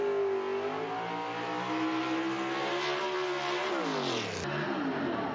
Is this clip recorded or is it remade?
recorded